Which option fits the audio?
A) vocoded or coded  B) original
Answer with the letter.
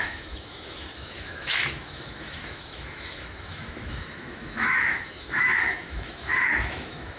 A